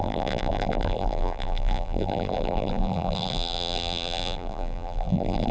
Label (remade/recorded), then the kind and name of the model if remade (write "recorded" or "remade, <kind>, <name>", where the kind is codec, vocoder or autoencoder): remade, vocoder, BigVGAN v2